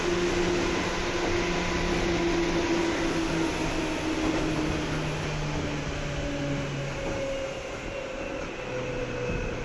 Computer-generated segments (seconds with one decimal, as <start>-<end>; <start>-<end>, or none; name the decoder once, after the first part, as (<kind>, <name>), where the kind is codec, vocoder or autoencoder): none